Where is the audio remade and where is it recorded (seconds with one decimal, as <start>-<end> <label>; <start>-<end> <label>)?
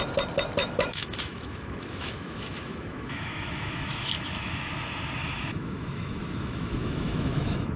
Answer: 0.0-0.6 recorded; 0.6-4.7 remade; 4.7-5.2 recorded; 5.2-7.8 remade